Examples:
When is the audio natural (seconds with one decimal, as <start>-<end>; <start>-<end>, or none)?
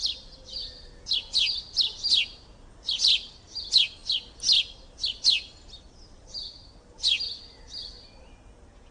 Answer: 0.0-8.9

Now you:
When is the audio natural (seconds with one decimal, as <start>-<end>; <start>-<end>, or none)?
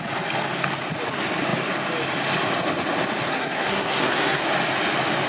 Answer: 0.0-3.3; 4.4-5.3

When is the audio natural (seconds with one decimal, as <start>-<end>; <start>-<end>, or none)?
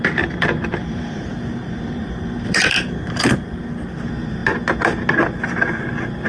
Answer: 0.0-0.8; 3.6-6.3